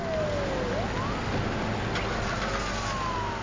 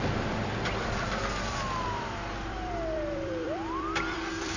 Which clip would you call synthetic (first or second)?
second